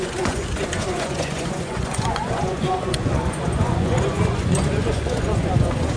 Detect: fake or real fake